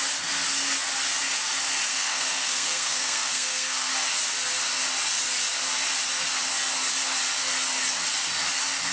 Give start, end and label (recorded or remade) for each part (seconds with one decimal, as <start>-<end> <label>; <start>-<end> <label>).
0.0-1.9 recorded; 1.9-3.9 remade; 3.9-8.9 recorded